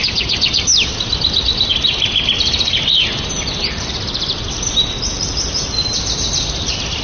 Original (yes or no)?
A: yes